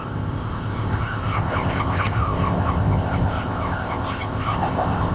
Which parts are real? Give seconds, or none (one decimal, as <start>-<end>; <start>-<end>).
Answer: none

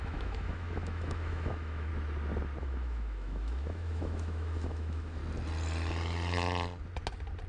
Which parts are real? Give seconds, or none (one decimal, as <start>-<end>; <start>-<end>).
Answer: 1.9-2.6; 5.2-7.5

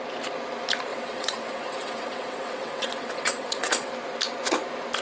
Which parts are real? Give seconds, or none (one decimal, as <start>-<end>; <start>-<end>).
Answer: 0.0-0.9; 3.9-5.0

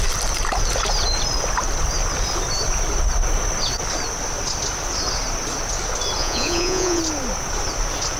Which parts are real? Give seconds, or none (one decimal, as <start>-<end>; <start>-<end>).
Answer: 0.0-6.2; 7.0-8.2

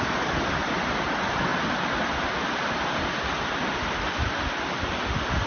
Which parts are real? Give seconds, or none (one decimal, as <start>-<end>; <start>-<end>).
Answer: 0.0-5.5

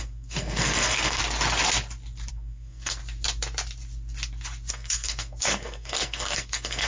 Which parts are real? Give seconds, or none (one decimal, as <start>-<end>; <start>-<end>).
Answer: 1.2-2.3; 3.0-4.7

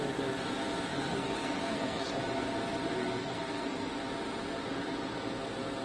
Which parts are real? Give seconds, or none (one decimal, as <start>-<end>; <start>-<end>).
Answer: 0.0-0.9; 2.2-3.2; 3.9-5.8